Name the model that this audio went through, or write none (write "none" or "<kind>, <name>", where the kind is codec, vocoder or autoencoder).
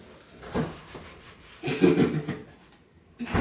none